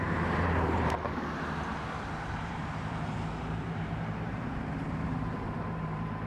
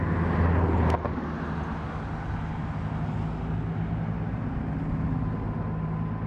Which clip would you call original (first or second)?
second